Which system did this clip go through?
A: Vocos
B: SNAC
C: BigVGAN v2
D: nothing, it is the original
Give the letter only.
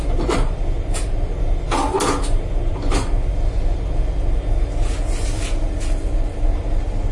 D